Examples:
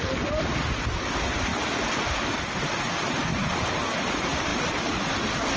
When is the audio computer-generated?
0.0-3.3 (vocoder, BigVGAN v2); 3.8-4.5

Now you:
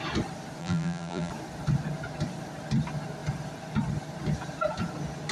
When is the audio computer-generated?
0.6-1.3 (vocoder, BigVGAN v2)

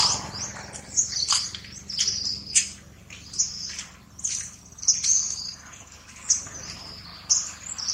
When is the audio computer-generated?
5.1-6.2 (codec, DAC)

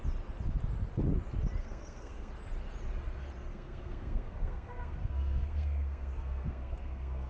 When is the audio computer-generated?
1.6-2.3 (codec, SNAC); 3.5-7.3

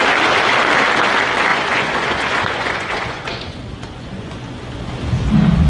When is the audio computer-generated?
1.5-4.9 (vocoder, Vocos)

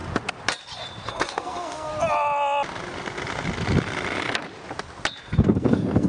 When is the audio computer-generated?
1.1-1.9 (codec, SNAC); 5.2-6.1

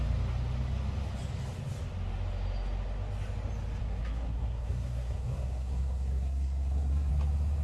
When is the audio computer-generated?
3.8-7.1 (codec, SNAC)

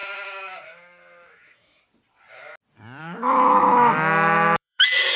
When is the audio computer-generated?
0.0-1.8 (autoencoder, DAC-VAE); 3.0-4.8